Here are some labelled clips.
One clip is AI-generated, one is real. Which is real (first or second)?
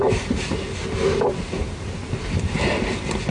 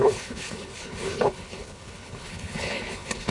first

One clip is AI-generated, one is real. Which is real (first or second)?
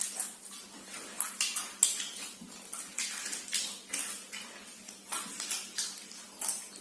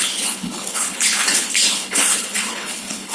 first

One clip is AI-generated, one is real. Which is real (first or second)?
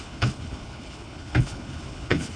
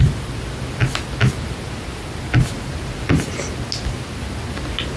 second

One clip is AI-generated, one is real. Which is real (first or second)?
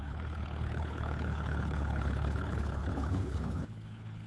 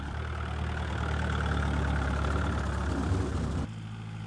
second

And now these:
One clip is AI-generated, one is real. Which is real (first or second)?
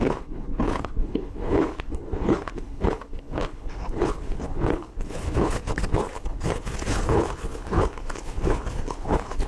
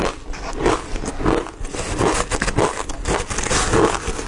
second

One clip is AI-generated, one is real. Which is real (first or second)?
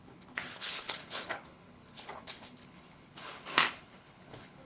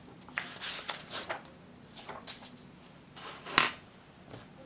second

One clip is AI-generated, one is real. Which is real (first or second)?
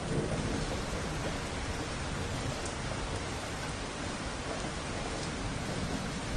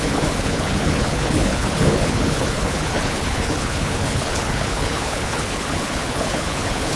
first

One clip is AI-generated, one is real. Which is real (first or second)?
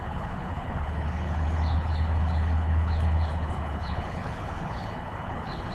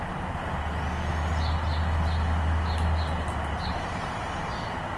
second